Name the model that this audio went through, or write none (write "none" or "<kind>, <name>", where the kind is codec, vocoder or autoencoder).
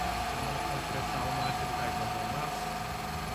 none